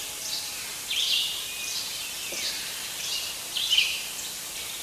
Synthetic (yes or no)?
yes